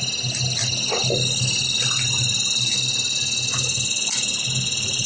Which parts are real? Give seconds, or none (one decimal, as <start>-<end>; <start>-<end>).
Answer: 0.0-5.1